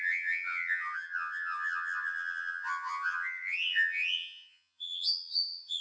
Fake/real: fake